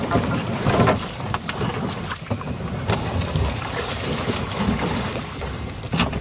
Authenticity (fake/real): fake